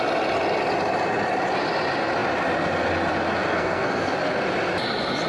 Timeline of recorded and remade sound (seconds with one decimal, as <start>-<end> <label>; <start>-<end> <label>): 0.0-3.4 recorded; 3.4-4.2 remade; 4.2-5.3 recorded